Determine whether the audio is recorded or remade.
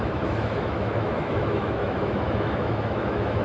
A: remade